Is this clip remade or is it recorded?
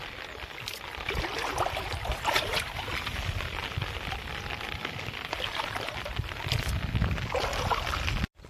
recorded